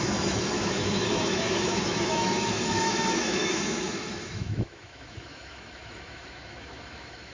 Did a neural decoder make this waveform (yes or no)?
yes